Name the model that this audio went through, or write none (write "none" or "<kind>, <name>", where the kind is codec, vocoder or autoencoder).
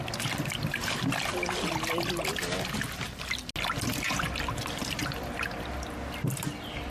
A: none